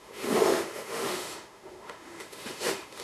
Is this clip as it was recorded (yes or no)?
no